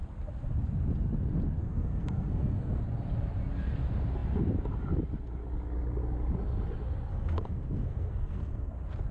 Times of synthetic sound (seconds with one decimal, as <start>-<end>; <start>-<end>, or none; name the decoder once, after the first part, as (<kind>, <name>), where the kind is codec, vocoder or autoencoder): 1.6-2.8 (codec, SNAC); 7.1-8.7

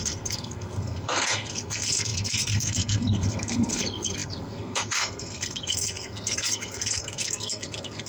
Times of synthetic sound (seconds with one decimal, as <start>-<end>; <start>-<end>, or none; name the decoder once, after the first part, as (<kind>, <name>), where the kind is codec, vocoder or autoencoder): 0.0-8.1 (codec, SNAC)

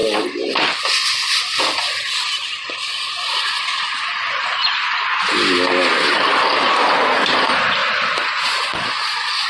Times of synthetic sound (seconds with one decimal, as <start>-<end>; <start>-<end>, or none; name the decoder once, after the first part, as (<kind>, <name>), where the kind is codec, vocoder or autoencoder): none

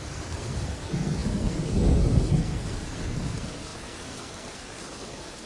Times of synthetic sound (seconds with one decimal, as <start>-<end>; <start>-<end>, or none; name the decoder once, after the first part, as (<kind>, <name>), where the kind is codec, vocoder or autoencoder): 0.0-5.5 (codec, SNAC)

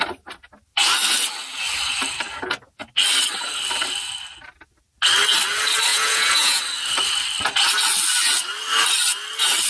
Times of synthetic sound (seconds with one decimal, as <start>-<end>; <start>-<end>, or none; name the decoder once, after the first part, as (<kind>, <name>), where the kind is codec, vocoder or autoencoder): 5.9-6.6 (vocoder, Vocos)